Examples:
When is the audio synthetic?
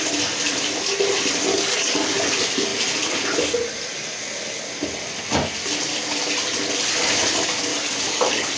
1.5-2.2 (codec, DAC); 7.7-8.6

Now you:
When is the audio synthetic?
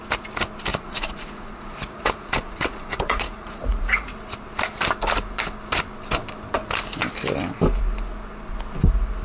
0.7-4.1 (vocoder, Vocos)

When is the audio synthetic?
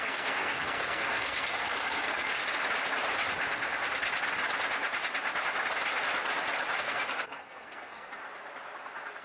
0.0-2.4 (codec, SNAC); 6.8-8.2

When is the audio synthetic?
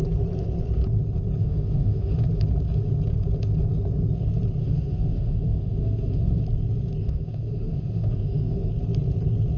1.4-2.2 (autoencoder, DAC-VAE); 4.6-6.4; 7.0-8.7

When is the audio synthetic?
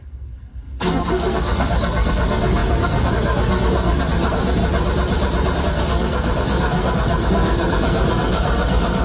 0.0-4.6 (codec, SNAC); 5.6-9.0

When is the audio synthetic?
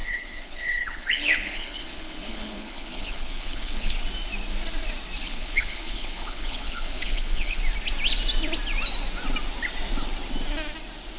0.0-4.0 (codec, HILCodec); 5.2-7.6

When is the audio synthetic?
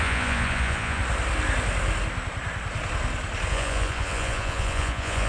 0.0-1.0 (vocoder, Vocos); 3.5-5.3